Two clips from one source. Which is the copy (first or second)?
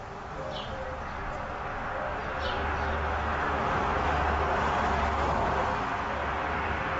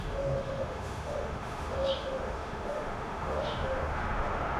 second